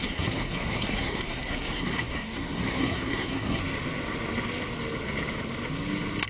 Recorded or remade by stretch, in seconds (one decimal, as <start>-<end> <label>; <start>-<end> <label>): 0.0-3.6 remade; 3.6-6.3 recorded